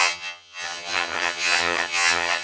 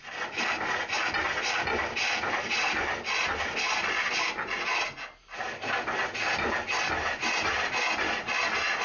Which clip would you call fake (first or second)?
first